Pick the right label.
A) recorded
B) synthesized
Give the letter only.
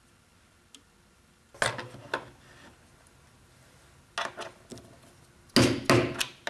A